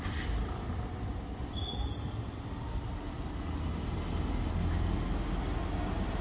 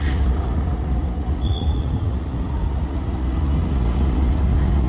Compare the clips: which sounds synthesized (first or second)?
second